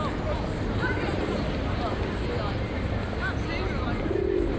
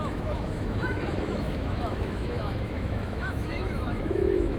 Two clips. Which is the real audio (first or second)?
first